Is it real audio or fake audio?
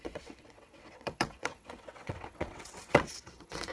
fake